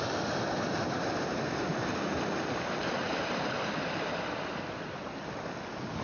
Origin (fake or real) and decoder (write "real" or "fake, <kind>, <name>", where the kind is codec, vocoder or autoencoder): real